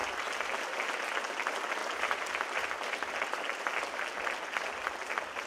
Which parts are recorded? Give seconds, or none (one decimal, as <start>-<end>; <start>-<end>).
0.0-5.5